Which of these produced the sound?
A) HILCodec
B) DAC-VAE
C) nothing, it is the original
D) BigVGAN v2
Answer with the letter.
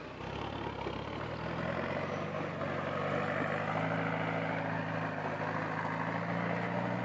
C